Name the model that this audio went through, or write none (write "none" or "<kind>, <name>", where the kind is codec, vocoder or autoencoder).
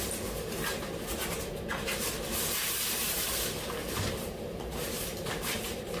vocoder, BigVGAN v2